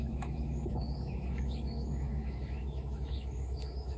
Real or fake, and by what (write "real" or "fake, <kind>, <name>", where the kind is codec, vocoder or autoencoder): fake, autoencoder, DAC-VAE